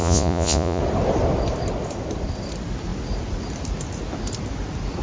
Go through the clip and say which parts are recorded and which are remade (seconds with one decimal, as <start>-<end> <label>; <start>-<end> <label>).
0.0-0.8 remade; 0.8-5.0 recorded